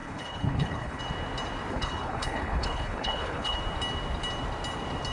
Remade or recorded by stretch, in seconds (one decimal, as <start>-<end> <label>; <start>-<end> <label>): 0.0-1.0 remade; 1.0-1.7 recorded; 1.7-3.6 remade; 3.6-5.1 recorded